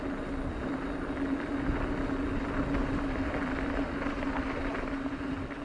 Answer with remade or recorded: recorded